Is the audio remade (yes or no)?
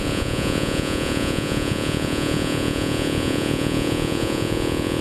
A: yes